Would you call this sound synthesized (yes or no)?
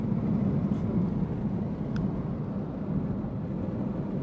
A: no